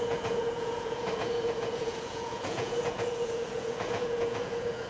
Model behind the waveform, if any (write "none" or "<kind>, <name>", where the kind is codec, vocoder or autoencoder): vocoder, Vocos